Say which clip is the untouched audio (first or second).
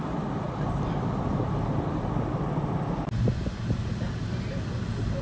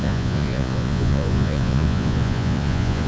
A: first